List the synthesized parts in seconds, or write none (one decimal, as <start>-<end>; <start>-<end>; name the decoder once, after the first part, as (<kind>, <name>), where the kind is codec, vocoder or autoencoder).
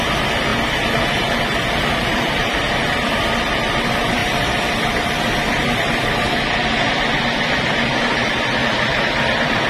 0.0-0.5 (vocoder, BigVGAN v2); 1.4-9.7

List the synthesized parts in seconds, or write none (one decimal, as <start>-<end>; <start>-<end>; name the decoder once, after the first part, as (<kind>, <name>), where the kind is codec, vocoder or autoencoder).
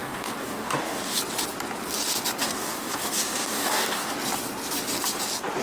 0.0-1.2 (codec, DAC); 2.4-4.1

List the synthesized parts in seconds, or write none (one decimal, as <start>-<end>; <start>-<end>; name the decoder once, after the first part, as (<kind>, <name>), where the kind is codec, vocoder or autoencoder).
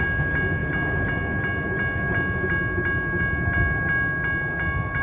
none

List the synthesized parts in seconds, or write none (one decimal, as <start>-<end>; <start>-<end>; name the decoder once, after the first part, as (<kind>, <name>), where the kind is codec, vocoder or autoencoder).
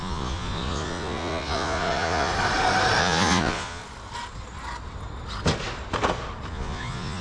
0.0-2.3 (vocoder, Vocos); 3.0-3.8; 6.5-7.2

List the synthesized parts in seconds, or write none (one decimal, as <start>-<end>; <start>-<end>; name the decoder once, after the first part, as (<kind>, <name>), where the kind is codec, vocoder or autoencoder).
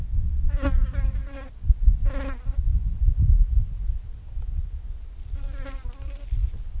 0.0-0.5 (vocoder, WaveNeXt)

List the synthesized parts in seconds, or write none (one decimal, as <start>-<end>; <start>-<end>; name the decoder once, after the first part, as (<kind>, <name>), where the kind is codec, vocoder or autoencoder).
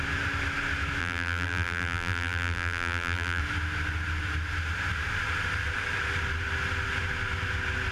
1.0-3.4 (vocoder, BigVGAN v2)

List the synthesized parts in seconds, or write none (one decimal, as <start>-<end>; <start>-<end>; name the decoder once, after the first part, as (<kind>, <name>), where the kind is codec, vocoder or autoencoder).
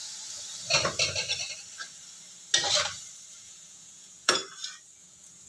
3.3-4.4 (vocoder, Vocos); 5.0-5.5